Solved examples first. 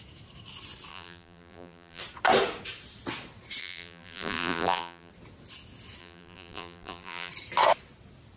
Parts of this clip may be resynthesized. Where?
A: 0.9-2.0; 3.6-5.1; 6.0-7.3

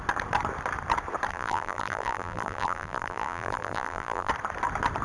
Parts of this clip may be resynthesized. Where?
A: 1.3-4.3